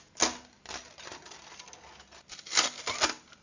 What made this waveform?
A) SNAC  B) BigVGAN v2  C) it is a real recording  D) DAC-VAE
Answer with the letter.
C